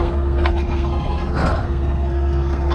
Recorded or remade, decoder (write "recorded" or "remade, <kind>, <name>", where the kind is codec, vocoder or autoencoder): remade, codec, SNAC